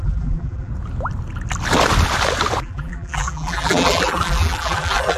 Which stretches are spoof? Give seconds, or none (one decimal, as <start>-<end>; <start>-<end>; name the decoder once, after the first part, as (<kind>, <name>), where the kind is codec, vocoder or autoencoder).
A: 0.0-0.7 (vocoder, BigVGAN v2); 2.6-5.2